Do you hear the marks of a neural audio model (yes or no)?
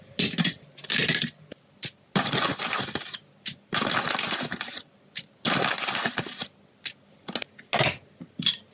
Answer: no